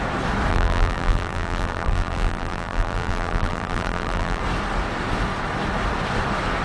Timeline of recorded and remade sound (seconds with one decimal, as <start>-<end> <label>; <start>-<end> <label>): 0.0-0.5 recorded; 0.5-4.4 remade; 4.4-6.6 recorded